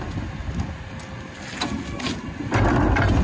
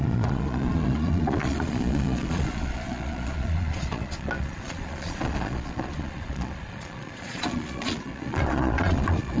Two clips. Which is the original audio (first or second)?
first